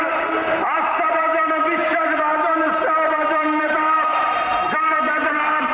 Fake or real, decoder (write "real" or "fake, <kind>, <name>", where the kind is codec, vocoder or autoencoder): fake, vocoder, BigVGAN v2